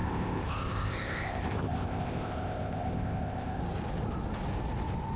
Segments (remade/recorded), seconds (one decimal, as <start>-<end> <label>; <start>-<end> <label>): 0.0-3.6 remade; 3.6-5.2 recorded